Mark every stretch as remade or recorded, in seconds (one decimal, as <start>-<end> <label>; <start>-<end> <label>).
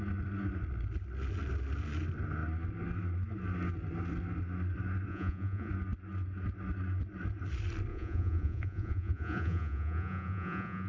0.0-5.1 recorded; 5.1-5.7 remade; 5.7-7.9 recorded; 7.9-10.9 remade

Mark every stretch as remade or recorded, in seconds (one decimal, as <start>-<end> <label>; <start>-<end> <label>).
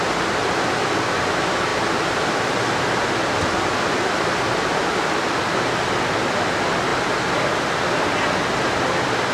0.0-9.3 recorded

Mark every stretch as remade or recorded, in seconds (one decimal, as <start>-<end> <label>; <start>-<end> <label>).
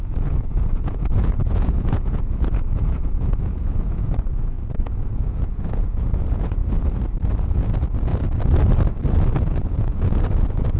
0.0-6.6 remade; 6.6-7.5 recorded; 7.5-8.1 remade; 8.1-9.4 recorded; 9.4-10.8 remade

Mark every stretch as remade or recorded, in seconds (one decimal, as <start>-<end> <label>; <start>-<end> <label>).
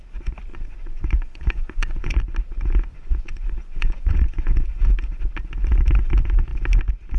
0.0-0.5 recorded; 0.5-2.2 remade; 2.2-2.9 recorded; 2.9-4.9 remade; 4.9-7.2 recorded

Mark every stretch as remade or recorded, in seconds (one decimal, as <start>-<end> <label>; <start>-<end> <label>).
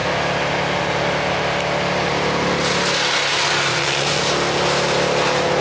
0.0-3.7 recorded; 3.7-4.2 remade; 4.2-5.6 recorded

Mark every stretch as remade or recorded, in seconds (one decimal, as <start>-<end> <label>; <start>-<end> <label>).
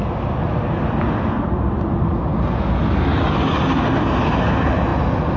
0.0-5.4 recorded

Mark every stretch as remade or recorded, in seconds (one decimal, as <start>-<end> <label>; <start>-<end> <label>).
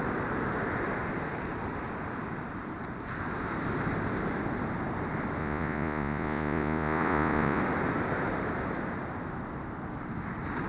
0.0-5.4 recorded; 5.4-7.6 remade; 7.6-10.7 recorded